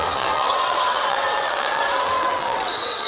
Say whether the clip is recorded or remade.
remade